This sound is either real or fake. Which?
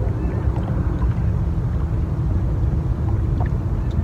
fake